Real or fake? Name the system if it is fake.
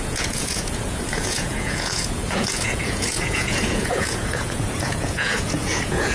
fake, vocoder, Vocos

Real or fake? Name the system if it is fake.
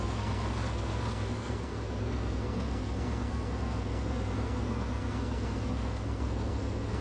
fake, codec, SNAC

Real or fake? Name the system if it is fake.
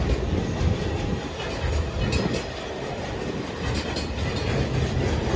real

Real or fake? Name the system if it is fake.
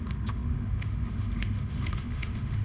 fake, autoencoder, DAC-VAE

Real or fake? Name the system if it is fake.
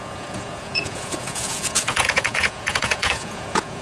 fake, vocoder, Vocos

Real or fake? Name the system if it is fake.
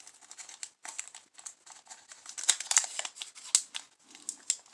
real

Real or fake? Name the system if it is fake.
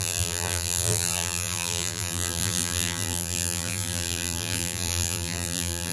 fake, vocoder, BigVGAN v2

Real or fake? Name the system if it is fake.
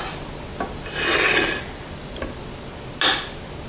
real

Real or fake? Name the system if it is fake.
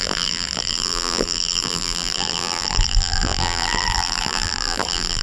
fake, vocoder, BigVGAN v2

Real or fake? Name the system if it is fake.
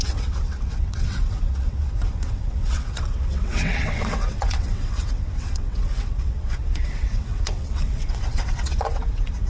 fake, vocoder, WaveNeXt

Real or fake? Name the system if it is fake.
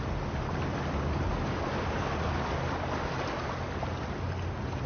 real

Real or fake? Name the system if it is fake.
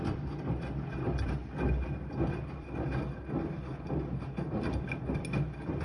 real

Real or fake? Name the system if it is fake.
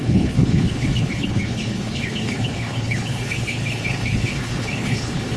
fake, codec, HILCodec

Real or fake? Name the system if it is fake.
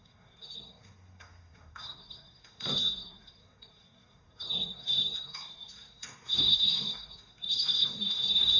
fake, codec, SNAC